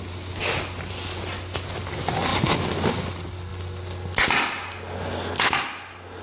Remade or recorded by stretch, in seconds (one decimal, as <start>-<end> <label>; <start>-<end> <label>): 0.0-6.2 recorded